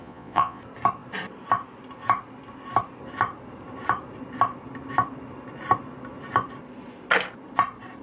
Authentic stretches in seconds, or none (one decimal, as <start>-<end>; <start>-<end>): 0.6-8.0